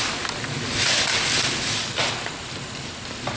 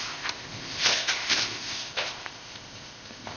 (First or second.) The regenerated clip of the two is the second